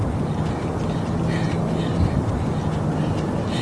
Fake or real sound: real